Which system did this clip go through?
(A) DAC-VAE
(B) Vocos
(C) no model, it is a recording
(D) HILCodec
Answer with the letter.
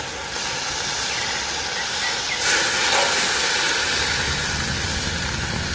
C